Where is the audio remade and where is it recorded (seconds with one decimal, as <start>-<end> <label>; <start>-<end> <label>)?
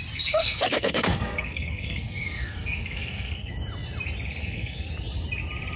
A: 0.0-0.4 recorded; 0.4-3.5 remade; 3.5-4.4 recorded; 4.4-4.9 remade; 4.9-5.8 recorded